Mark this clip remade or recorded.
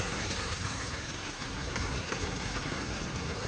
remade